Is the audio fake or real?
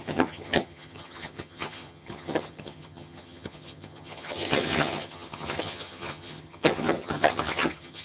fake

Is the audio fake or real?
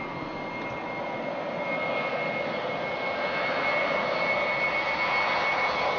real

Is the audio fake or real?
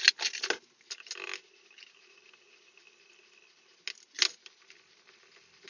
real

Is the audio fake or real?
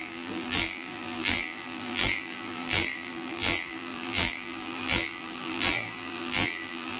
fake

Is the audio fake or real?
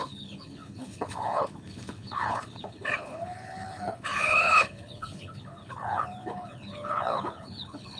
fake